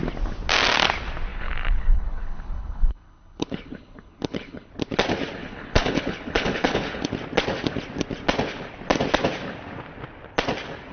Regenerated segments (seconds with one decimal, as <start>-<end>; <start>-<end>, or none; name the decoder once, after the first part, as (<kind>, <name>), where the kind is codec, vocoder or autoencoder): 1.3-4.7 (codec, HILCodec); 5.4-7.1